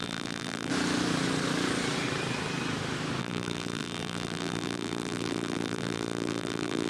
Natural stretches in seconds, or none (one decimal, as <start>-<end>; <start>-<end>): 0.7-3.2